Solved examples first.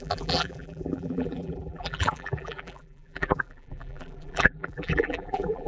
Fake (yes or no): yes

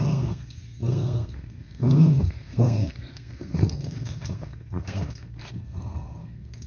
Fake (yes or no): yes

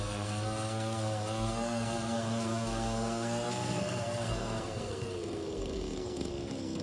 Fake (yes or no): yes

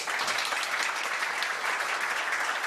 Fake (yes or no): no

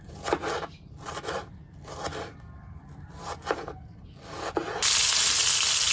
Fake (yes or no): no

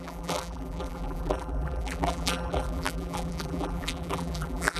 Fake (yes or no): yes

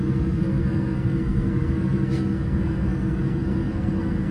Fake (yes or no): yes